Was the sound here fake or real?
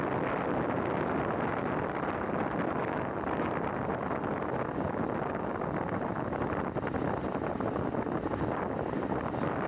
real